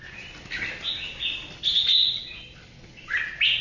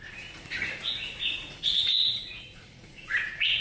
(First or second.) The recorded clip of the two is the first